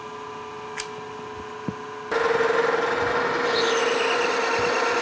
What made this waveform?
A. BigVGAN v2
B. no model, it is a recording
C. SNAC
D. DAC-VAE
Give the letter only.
B